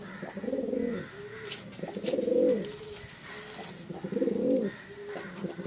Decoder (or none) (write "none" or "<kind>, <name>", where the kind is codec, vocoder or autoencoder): none